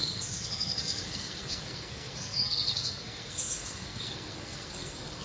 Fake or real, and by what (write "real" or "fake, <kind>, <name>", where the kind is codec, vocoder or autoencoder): fake, codec, SNAC